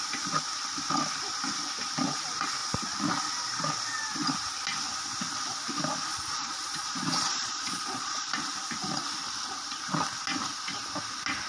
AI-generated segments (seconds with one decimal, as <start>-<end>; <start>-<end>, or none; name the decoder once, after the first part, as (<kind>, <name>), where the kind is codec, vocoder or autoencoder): 6.1-8.3 (vocoder, Vocos)